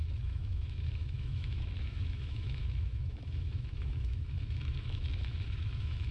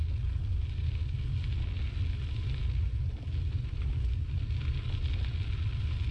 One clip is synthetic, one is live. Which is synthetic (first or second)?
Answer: first